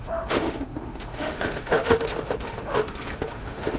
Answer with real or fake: fake